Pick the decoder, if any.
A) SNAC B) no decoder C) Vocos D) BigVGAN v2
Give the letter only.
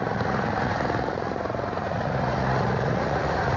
C